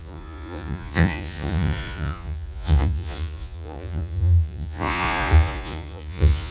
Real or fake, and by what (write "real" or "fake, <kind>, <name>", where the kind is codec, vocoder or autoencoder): fake, vocoder, Vocos